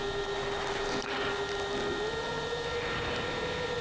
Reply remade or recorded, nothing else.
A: recorded